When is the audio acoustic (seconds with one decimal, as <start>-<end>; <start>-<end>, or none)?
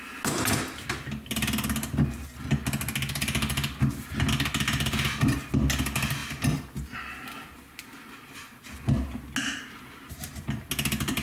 0.0-11.2